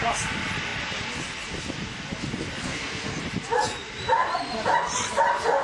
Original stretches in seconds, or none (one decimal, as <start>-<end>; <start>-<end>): 0.0-2.6; 3.2-5.6